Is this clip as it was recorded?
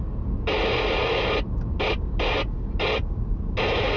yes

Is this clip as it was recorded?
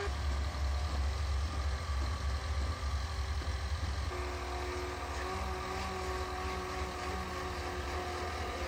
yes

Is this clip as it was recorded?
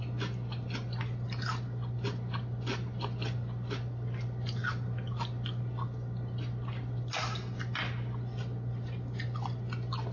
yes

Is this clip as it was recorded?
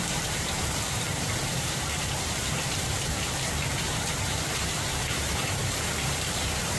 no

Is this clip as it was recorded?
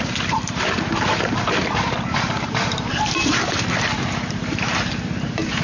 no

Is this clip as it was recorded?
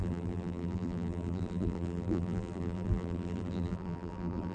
no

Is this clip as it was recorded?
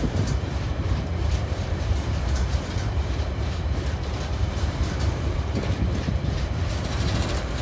no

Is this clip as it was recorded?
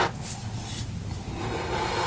yes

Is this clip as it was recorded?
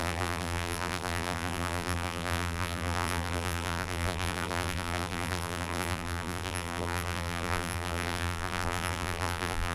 no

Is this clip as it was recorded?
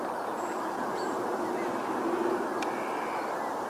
yes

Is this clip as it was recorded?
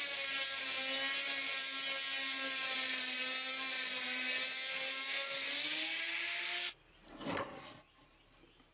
yes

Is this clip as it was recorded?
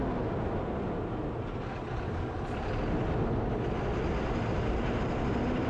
yes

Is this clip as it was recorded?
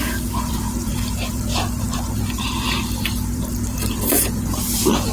no